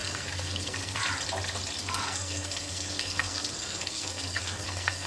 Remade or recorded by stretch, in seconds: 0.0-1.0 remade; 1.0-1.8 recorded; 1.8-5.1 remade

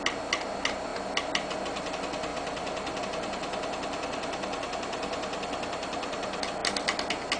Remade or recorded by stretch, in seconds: 0.0-2.3 recorded; 2.3-3.0 remade; 3.0-7.4 recorded

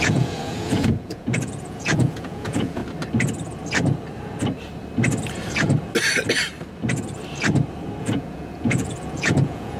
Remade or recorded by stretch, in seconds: 0.0-2.8 remade; 2.8-8.0 recorded; 8.0-9.8 remade

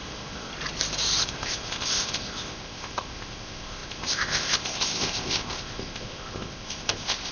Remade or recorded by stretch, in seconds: 0.0-0.5 remade; 0.5-1.2 recorded; 1.2-7.3 remade

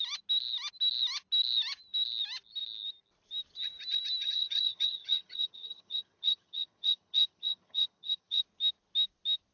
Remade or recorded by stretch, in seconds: 0.0-4.2 recorded; 4.2-8.4 remade; 8.4-9.5 recorded

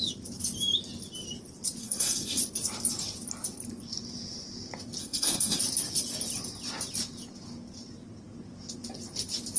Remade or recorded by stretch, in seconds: 0.0-1.8 recorded; 1.8-2.4 remade; 2.4-5.0 recorded; 5.0-5.6 remade; 5.6-9.6 recorded

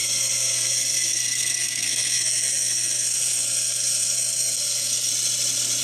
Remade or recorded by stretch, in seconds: 0.0-5.1 remade; 5.1-5.8 recorded